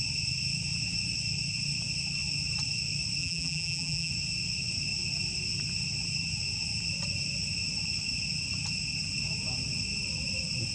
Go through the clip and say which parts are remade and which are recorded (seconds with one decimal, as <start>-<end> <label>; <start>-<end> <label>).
0.0-3.2 recorded; 3.2-4.1 remade; 4.1-10.7 recorded